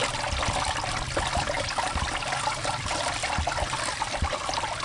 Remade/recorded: recorded